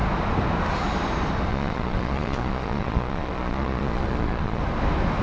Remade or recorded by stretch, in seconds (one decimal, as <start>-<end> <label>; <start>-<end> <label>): 0.0-1.5 recorded; 1.5-4.6 remade; 4.6-5.2 recorded